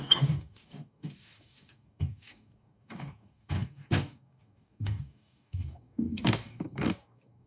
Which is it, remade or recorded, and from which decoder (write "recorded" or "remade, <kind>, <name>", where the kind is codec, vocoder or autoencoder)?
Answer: remade, codec, DAC